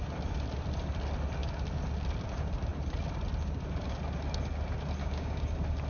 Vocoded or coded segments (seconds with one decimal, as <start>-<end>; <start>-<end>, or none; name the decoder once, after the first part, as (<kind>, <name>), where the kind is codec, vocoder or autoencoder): 5.0-5.5 (codec, DAC)